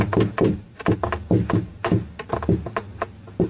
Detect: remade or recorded recorded